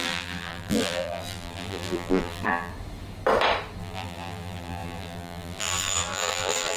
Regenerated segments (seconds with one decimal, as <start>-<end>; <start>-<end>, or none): 0.0-2.7; 3.8-6.8